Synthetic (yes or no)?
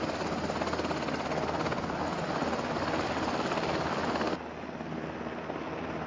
no